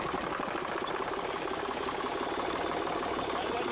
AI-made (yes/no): no